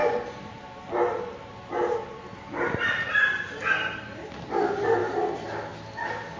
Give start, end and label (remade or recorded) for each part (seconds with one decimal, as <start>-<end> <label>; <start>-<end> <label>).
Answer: 0.0-1.5 remade; 1.5-2.3 recorded; 2.3-4.2 remade; 4.2-5.0 recorded; 5.0-5.7 remade; 5.7-6.4 recorded